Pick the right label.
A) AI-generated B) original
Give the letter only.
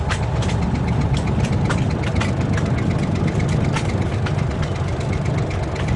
B